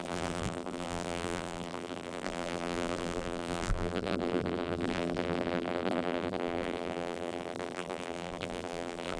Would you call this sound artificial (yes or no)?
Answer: yes